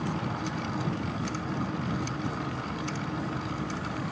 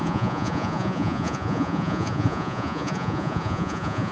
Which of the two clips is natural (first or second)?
first